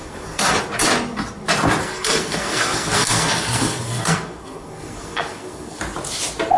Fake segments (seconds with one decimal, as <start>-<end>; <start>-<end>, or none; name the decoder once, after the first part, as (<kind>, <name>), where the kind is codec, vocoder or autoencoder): 0.0-0.6 (codec, SNAC); 1.8-5.8